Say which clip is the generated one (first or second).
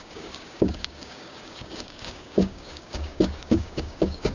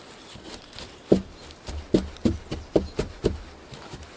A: first